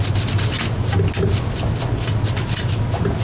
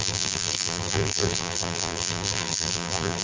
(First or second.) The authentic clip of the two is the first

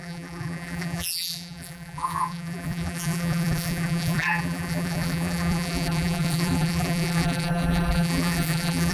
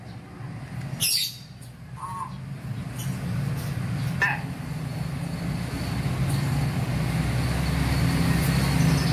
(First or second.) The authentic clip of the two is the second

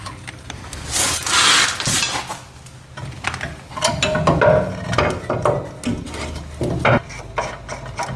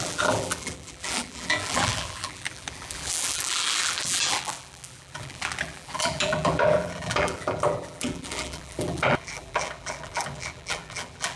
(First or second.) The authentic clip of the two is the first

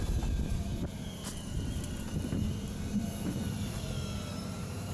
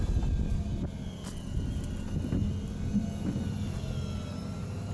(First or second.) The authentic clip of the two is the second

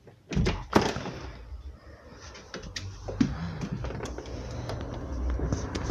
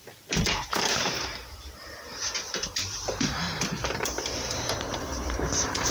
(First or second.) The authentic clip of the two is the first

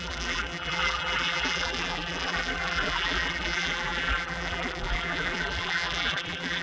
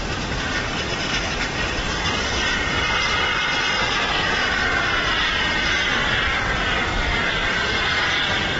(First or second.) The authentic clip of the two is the second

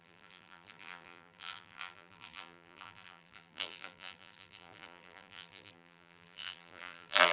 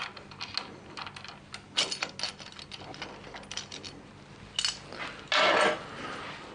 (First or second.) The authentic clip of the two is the second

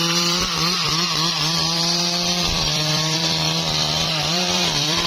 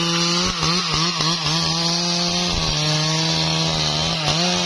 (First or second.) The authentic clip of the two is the second